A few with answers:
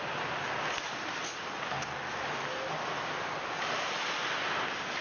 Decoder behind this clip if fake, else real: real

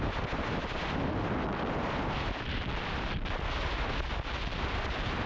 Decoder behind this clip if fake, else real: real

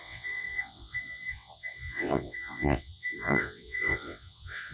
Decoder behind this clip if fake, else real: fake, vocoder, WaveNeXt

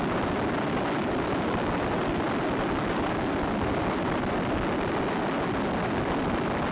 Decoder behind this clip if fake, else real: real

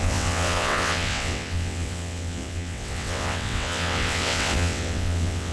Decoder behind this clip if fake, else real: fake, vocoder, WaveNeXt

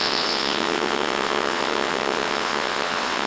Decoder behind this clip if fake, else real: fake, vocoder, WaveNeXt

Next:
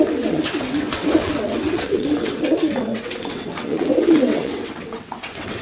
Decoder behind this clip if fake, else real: fake, vocoder, WaveNeXt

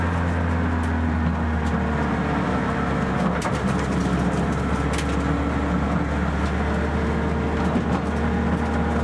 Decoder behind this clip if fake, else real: real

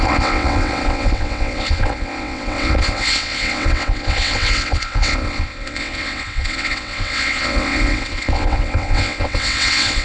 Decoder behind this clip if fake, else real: fake, vocoder, WaveNeXt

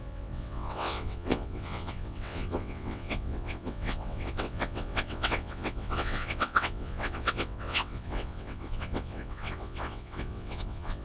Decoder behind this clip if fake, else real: fake, vocoder, WaveNeXt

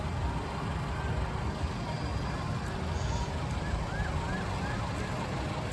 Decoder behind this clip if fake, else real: real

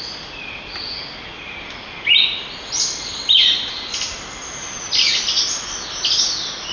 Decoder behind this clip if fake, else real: real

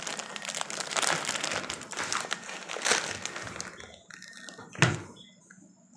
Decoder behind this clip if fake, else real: real